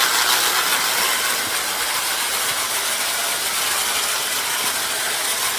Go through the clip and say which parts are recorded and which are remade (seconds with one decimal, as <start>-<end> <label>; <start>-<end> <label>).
0.0-5.6 recorded

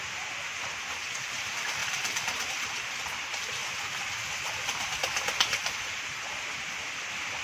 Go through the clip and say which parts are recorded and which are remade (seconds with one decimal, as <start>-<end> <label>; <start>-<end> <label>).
0.0-7.4 recorded

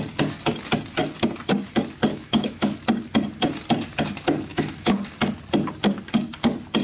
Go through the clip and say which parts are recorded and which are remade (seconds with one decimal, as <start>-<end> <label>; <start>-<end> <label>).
0.0-2.1 recorded; 2.1-2.8 remade; 2.8-4.5 recorded; 4.5-5.0 remade; 5.0-6.8 recorded

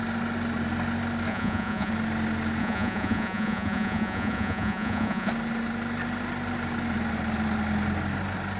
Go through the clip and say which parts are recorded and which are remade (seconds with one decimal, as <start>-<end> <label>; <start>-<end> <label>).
0.0-1.3 recorded; 1.3-1.9 remade; 1.9-2.6 recorded; 2.6-5.3 remade; 5.3-8.6 recorded

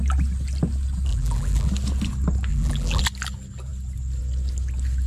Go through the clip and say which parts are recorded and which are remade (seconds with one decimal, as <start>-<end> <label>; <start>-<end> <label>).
0.0-1.1 recorded; 1.1-1.7 remade; 1.7-2.5 recorded; 2.5-3.0 remade; 3.0-5.1 recorded